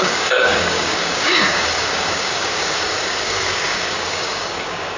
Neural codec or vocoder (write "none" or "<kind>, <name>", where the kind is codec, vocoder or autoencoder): codec, DAC